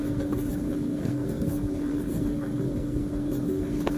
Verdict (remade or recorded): remade